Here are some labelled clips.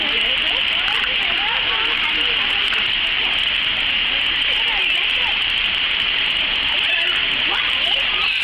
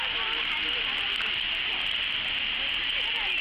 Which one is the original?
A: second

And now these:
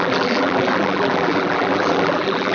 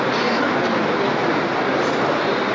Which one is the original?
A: second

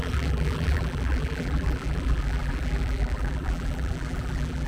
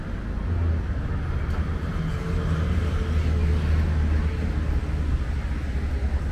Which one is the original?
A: second